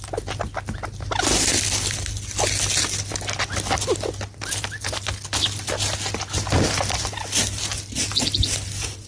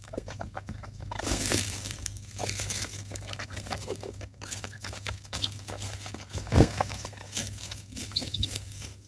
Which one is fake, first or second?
second